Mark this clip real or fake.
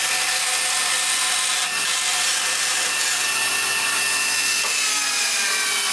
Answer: real